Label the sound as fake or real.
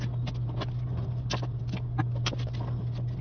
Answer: real